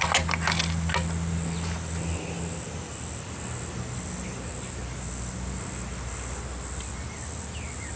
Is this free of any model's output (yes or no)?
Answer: yes